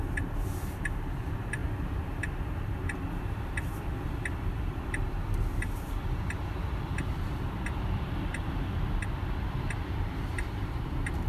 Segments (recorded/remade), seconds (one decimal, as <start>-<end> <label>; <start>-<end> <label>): 0.0-1.6 remade; 1.6-2.6 recorded; 2.6-11.3 remade